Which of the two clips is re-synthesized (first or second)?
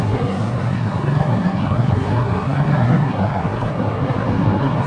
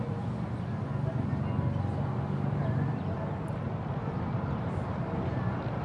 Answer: first